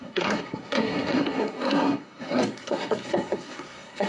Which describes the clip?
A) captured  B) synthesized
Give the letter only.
B